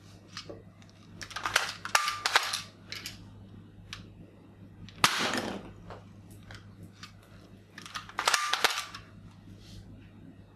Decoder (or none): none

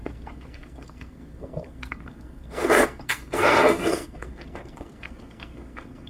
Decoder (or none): codec, SNAC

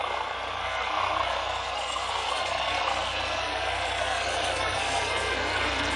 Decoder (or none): codec, SNAC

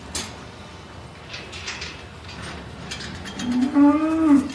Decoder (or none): none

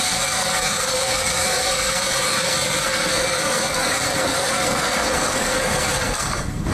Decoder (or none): codec, SNAC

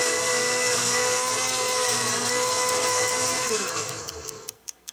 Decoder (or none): codec, SNAC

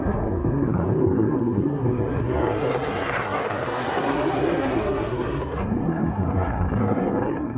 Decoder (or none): codec, SNAC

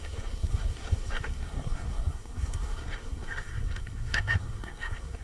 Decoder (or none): codec, SNAC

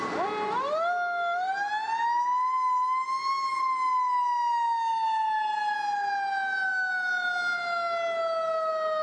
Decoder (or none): none